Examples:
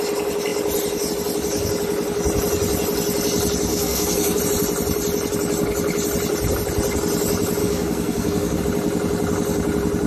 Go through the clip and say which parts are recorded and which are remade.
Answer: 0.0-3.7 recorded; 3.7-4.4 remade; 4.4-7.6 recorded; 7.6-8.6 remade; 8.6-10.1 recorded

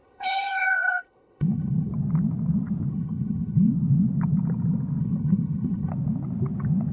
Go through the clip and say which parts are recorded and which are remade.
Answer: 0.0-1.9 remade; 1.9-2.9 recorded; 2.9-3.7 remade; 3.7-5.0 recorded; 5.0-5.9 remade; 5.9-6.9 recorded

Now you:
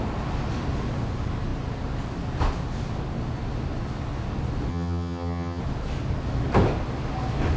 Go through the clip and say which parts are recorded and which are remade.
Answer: 0.0-4.7 recorded; 4.7-5.6 remade; 5.6-7.6 recorded